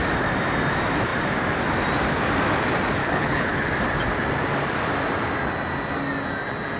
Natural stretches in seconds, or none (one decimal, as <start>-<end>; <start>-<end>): 0.0-3.0; 3.7-6.8